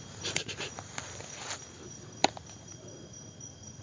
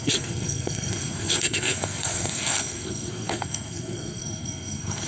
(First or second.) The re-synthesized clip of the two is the second